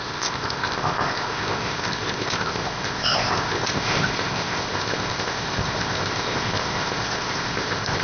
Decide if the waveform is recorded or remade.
remade